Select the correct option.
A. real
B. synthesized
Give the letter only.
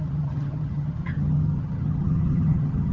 B